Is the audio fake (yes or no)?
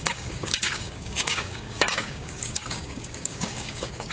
yes